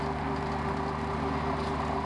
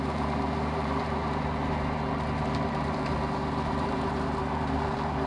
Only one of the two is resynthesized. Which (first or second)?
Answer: second